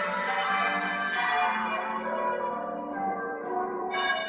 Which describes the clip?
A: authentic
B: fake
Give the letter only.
B